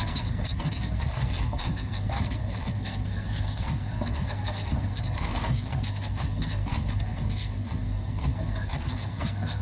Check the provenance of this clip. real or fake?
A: fake